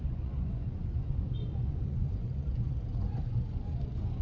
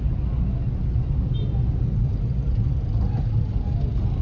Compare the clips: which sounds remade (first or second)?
first